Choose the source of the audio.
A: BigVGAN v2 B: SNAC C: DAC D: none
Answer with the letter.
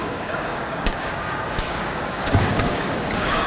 C